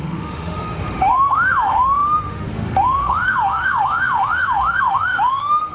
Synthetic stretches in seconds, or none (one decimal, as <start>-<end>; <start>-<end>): 0.0-5.7